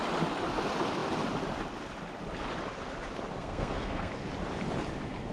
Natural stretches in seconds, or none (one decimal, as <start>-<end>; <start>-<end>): 0.0-3.4; 4.1-5.3